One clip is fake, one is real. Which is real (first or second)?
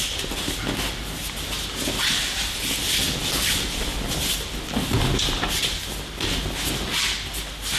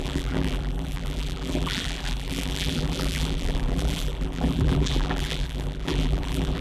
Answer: first